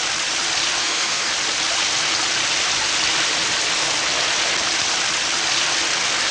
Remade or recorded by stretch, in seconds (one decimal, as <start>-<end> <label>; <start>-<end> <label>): 0.0-0.8 recorded; 0.8-1.3 remade; 1.3-6.3 recorded